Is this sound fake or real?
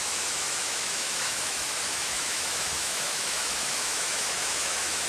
fake